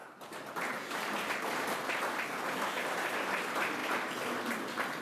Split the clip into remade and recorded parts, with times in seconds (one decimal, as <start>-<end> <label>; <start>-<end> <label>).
0.0-1.5 remade; 1.5-5.0 recorded